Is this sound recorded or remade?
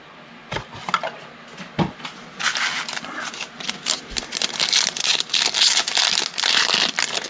recorded